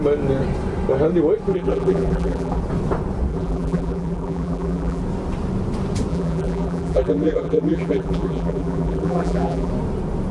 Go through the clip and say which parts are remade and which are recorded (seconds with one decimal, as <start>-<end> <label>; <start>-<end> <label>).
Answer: 0.0-1.5 recorded; 1.5-2.6 remade; 2.6-3.3 recorded; 3.3-5.0 remade; 5.0-6.1 recorded; 6.1-9.7 remade; 9.7-10.3 recorded